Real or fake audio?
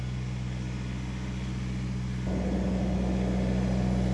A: real